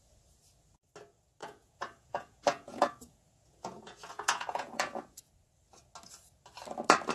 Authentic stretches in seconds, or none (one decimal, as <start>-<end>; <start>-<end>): 0.0-1.4; 5.3-7.1